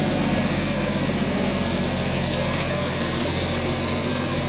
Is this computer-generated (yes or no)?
yes